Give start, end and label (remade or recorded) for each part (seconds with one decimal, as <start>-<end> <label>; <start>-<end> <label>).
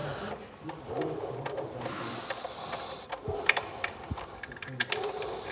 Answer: 0.0-5.5 recorded